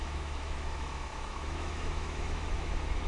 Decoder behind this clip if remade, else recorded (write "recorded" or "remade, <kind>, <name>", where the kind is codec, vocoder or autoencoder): remade, autoencoder, DAC-VAE